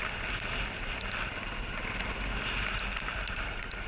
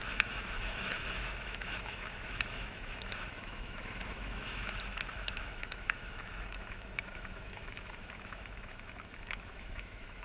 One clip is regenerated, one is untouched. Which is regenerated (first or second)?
second